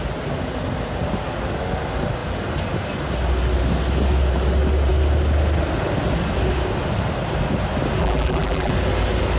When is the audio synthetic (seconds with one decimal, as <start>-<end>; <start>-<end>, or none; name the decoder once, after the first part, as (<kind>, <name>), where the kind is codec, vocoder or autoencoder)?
8.0-8.7 (vocoder, BigVGAN v2)